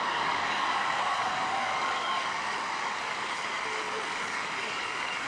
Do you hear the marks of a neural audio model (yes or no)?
yes